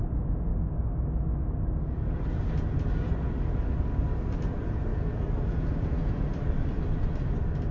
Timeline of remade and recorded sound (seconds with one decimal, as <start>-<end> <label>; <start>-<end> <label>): 0.0-0.5 recorded; 0.5-1.1 remade; 1.1-7.7 recorded